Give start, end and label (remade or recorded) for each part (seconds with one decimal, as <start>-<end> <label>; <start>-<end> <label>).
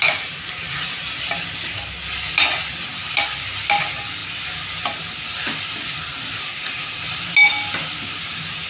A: 0.0-6.5 recorded; 6.5-7.1 remade; 7.1-8.7 recorded